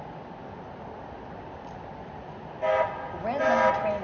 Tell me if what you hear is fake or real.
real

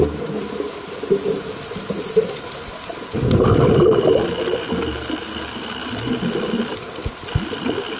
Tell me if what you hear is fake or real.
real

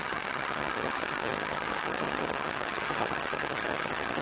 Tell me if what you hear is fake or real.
fake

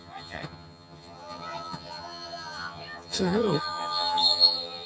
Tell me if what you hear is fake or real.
fake